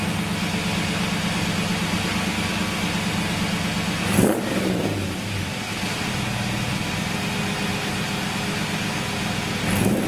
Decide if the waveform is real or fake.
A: real